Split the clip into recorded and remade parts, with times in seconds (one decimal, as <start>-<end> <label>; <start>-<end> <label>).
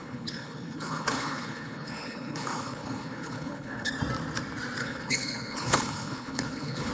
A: 0.0-3.9 remade; 3.9-4.8 recorded; 4.8-6.9 remade